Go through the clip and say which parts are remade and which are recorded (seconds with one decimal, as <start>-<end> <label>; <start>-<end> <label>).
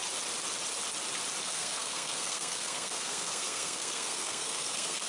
0.0-1.4 recorded; 1.4-5.1 remade